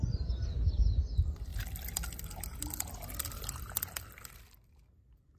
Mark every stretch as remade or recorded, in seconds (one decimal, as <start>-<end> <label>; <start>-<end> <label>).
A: 0.0-5.4 recorded